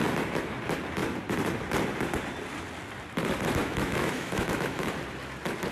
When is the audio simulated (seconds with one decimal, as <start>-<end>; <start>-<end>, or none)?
3.6-4.9